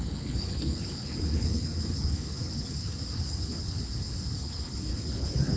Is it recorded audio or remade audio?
remade